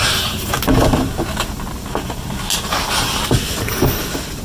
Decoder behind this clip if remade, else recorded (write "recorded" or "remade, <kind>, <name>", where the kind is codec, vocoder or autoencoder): recorded